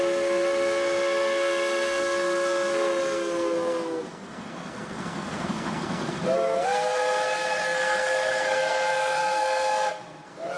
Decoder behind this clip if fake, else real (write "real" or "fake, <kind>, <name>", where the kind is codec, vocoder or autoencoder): fake, codec, SNAC